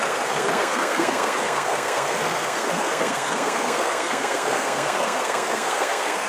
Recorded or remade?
remade